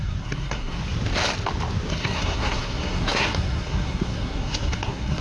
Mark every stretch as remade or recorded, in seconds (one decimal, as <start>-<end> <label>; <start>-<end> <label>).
0.0-0.8 remade; 0.8-1.9 recorded; 1.9-5.2 remade